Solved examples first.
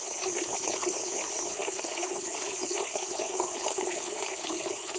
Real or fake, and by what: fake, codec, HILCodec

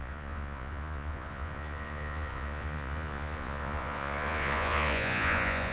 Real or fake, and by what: fake, vocoder, Vocos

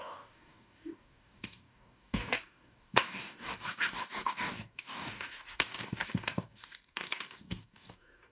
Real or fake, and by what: fake, codec, DAC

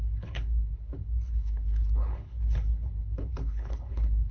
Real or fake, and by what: fake, codec, HILCodec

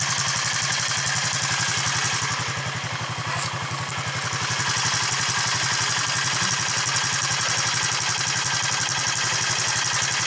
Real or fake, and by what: real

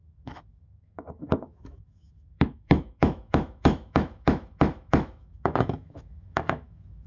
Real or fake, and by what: fake, autoencoder, DAC-VAE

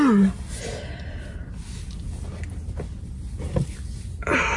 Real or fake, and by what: real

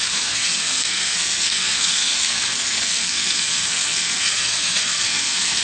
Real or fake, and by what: fake, codec, SNAC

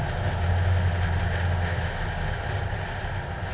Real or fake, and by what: real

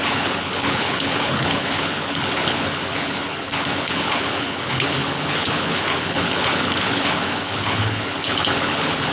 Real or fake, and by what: fake, codec, HILCodec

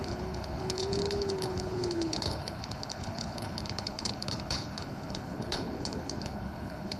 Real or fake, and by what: fake, codec, HILCodec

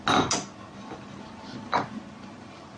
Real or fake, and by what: real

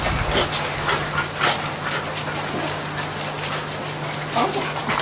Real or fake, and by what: real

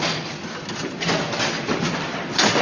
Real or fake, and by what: real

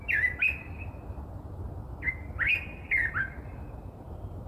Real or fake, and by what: real